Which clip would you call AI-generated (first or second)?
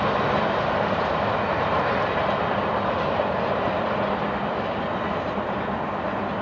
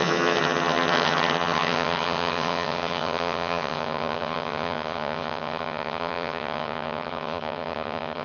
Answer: second